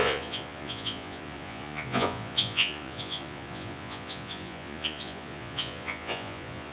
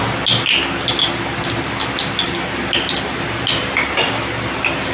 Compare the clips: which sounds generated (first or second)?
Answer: first